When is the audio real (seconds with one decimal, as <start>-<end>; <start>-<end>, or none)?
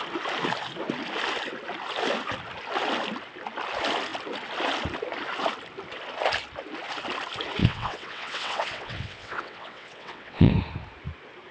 0.0-7.6; 10.5-11.5